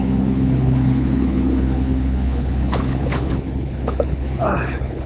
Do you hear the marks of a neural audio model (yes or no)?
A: yes